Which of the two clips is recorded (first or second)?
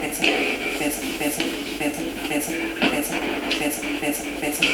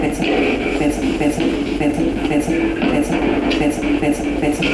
second